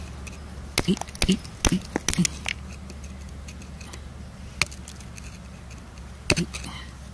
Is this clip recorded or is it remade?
recorded